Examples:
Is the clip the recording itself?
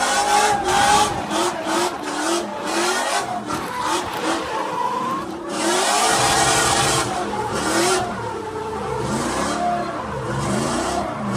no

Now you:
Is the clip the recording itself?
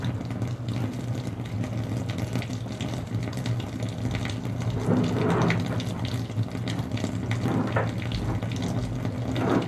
yes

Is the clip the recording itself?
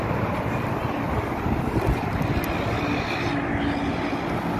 yes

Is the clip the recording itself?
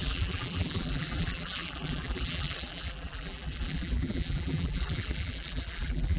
no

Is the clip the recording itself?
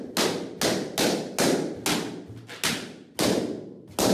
yes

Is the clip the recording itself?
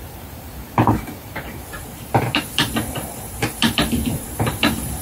no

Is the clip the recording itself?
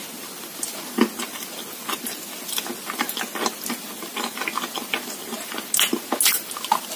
yes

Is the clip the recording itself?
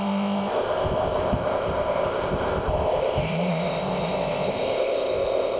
no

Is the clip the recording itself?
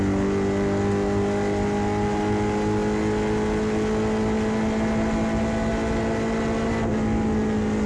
yes